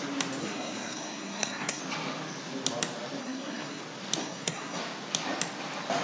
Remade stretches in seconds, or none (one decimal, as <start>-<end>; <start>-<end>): 0.4-1.8; 3.2-3.8; 4.2-4.8

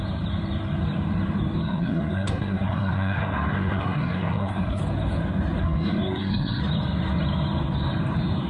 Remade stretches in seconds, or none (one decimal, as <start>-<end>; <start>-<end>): 1.6-4.8; 5.6-6.6